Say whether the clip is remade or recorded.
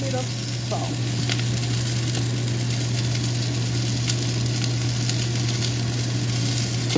recorded